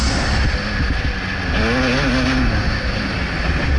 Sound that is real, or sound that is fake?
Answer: real